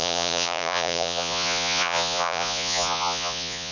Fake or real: fake